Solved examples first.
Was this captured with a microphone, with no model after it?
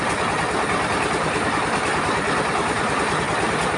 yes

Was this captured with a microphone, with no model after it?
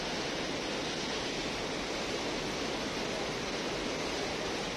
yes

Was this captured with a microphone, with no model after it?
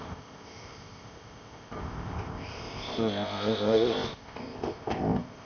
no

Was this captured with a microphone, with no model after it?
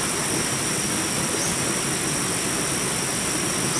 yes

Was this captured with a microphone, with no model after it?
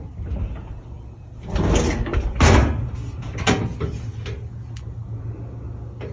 yes